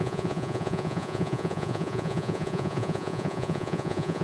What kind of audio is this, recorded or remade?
remade